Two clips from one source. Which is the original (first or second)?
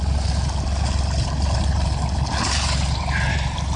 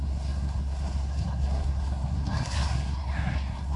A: first